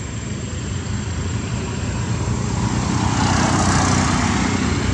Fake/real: real